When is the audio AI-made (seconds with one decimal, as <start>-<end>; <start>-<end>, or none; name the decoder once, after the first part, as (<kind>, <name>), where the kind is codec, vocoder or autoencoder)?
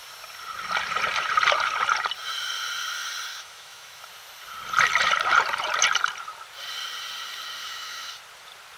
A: 3.3-4.0 (autoencoder, DAC-VAE); 7.6-8.1